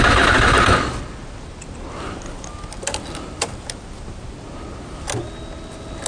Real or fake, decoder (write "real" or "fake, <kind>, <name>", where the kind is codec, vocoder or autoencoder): real